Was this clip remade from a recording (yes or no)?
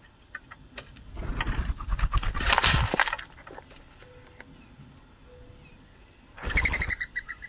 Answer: no